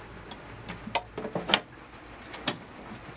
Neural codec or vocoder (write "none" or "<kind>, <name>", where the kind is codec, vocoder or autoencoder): none